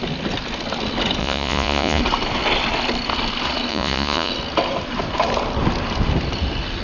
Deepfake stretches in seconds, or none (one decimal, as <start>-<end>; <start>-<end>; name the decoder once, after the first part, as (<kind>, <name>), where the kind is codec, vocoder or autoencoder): 1.2-2.0 (vocoder, Vocos); 3.7-4.3